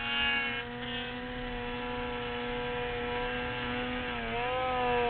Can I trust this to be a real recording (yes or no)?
yes